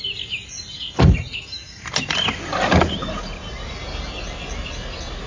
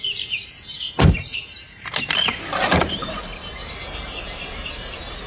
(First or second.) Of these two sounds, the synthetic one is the second